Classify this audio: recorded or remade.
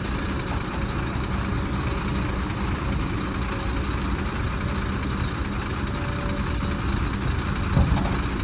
recorded